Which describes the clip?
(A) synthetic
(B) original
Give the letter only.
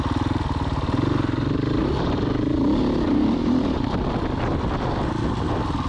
B